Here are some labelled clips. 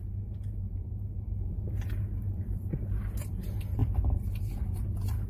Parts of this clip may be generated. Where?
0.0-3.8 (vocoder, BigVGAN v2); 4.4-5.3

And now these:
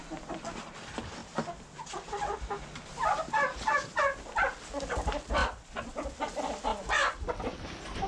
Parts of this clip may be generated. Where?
none